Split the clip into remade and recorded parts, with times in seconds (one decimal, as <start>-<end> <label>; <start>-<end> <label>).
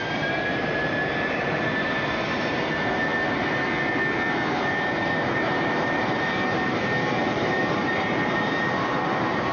0.0-3.1 remade; 3.1-4.6 recorded; 4.6-9.5 remade